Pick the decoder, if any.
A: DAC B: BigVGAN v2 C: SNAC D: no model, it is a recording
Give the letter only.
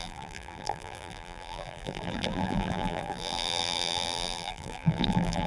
B